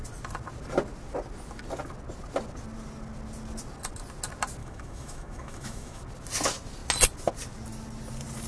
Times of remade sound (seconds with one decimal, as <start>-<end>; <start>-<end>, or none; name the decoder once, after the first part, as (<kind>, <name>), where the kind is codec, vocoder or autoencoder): 4.6-6.0 (autoencoder, DAC-VAE)